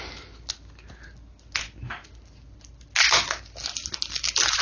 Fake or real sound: real